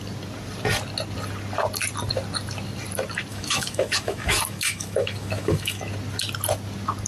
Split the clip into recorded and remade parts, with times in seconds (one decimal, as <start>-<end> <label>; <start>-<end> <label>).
0.0-3.3 recorded; 3.3-5.8 remade; 5.8-7.1 recorded